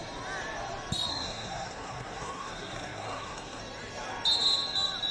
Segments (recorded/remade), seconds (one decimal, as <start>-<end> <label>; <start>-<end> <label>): 0.0-1.1 recorded; 1.1-3.6 remade; 3.6-5.1 recorded